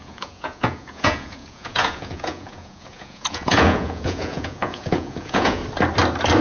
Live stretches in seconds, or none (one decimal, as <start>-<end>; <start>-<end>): 5.6-6.4